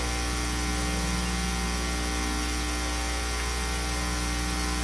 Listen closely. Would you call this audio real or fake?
real